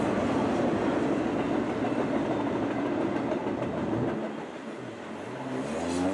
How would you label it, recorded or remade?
recorded